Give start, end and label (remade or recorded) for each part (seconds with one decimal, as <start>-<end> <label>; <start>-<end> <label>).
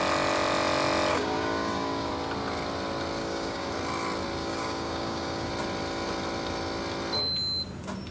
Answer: 0.0-1.1 recorded; 1.1-2.1 remade; 2.1-3.2 recorded; 3.2-3.7 remade; 3.7-4.4 recorded; 4.4-5.5 remade; 5.5-8.1 recorded